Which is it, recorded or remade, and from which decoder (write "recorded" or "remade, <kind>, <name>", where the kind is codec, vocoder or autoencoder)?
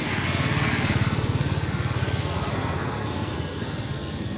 remade, codec, SNAC